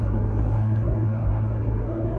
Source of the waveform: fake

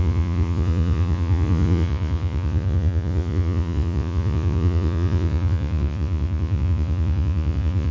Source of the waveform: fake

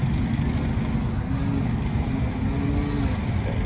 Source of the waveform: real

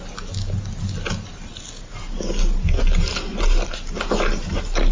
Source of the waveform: real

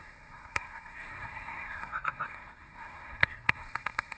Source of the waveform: fake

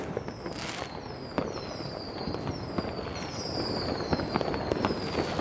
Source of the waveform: real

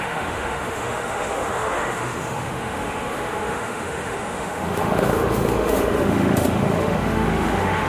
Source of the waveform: fake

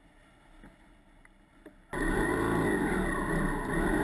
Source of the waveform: real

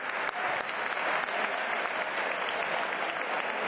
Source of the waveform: real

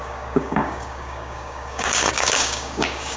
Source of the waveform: fake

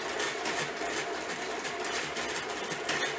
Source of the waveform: real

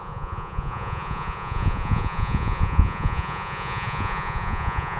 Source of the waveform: fake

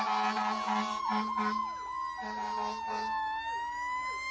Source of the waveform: real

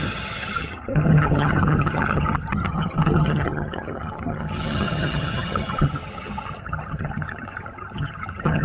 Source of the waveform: fake